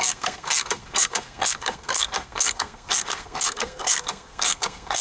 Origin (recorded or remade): remade